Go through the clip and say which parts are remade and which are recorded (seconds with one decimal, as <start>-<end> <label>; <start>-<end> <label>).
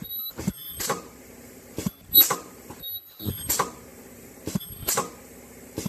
0.0-5.9 recorded